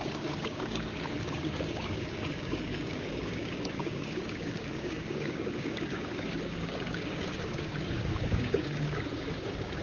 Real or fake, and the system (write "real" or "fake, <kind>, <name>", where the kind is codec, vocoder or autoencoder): fake, codec, DAC